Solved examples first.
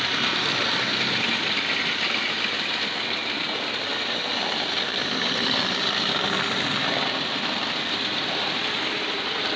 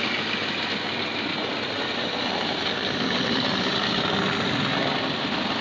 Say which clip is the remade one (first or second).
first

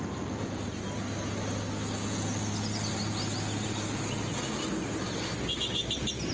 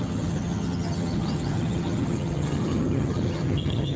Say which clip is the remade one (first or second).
second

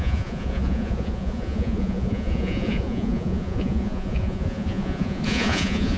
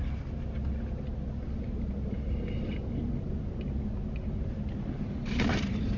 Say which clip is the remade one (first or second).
first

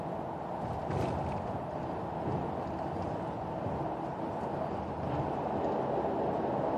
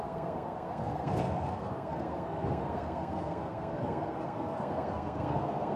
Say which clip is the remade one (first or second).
second